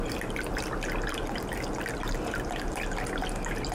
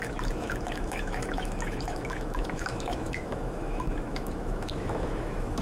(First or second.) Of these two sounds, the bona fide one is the first